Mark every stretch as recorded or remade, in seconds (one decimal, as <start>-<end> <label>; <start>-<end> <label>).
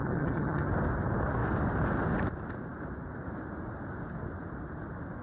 0.0-0.7 remade; 0.7-5.2 recorded